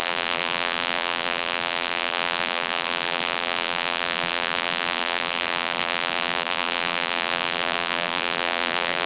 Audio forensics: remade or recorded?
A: remade